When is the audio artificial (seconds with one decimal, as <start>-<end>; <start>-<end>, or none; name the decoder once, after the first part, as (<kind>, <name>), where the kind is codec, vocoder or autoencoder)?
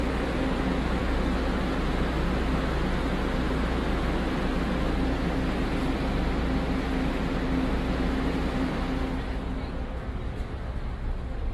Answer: none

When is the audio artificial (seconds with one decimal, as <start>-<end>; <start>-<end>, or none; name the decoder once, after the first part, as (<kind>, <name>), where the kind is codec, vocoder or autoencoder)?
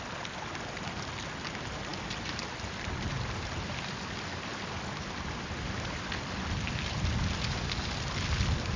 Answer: none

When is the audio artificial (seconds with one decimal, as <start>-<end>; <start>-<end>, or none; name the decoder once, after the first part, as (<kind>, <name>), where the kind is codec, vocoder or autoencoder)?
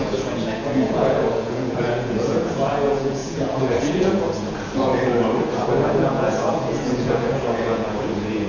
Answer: 0.0-4.9 (vocoder, Vocos); 5.9-8.5